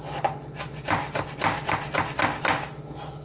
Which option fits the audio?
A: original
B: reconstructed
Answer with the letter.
A